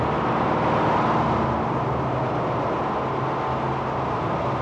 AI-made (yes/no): no